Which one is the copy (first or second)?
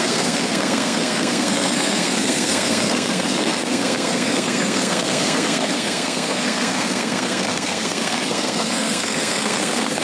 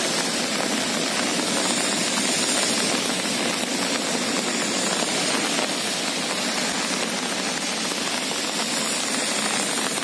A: first